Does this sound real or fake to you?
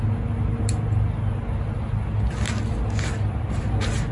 real